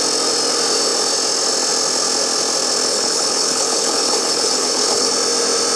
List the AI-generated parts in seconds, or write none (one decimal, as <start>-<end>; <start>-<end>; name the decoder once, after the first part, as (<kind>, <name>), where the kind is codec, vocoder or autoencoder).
2.9-5.1 (codec, HILCodec)

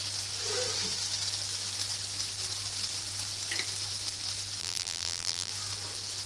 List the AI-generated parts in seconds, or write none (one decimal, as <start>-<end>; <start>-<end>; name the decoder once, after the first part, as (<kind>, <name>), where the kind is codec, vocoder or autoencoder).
4.6-5.5 (vocoder, BigVGAN v2)

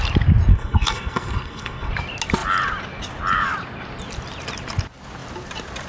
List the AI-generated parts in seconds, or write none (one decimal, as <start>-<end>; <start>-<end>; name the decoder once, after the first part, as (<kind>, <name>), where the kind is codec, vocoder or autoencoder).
0.5-1.9 (codec, SNAC)